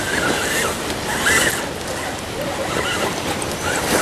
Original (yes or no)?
yes